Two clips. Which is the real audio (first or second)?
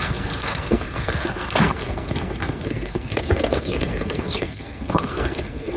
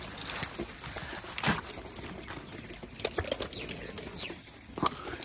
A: second